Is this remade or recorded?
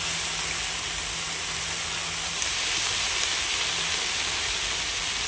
recorded